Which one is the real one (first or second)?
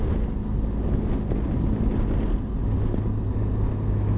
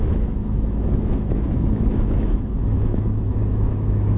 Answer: first